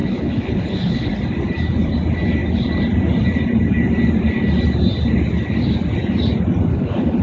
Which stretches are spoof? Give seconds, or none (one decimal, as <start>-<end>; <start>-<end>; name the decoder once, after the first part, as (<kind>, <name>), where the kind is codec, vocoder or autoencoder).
0.0-1.1 (codec, HILCodec); 6.7-7.2